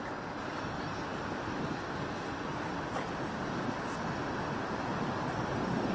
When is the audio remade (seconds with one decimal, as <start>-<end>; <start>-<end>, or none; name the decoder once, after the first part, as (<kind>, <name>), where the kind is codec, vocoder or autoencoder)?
none